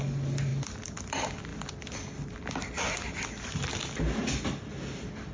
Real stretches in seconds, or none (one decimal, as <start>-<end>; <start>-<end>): 0.0-5.3